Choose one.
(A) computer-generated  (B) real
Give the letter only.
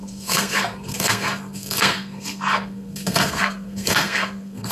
A